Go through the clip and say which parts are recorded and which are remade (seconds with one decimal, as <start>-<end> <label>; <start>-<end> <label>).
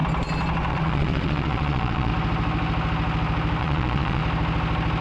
0.0-0.7 recorded; 0.7-2.1 remade; 2.1-3.6 recorded; 3.6-4.2 remade; 4.2-5.0 recorded